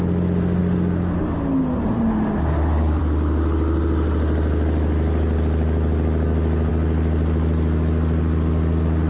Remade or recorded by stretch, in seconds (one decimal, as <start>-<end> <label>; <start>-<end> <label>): 0.0-9.1 recorded